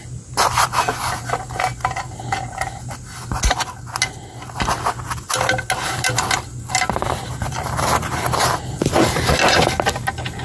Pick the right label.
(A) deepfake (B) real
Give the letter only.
B